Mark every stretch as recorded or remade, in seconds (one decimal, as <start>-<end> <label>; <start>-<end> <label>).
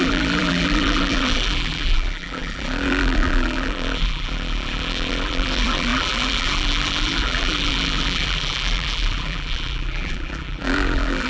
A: 0.0-11.3 remade